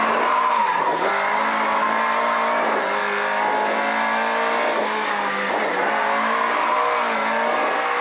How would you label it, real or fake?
real